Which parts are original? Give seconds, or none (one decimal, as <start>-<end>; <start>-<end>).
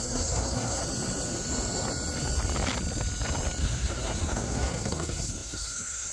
0.8-3.6